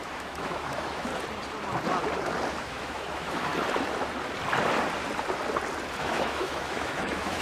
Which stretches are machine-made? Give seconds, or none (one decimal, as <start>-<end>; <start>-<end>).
0.0-1.1; 2.5-3.5; 6.0-7.4